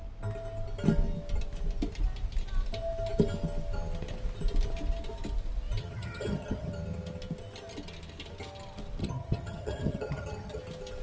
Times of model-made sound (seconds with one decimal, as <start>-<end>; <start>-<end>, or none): 5.8-6.7; 9.0-10.6